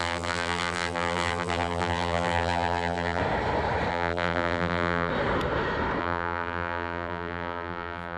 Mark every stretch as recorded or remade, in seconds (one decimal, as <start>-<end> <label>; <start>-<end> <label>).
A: 0.0-3.2 remade; 3.2-3.9 recorded; 3.9-5.1 remade; 5.1-6.0 recorded; 6.0-8.2 remade